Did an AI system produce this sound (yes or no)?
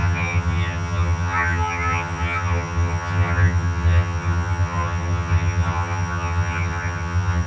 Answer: yes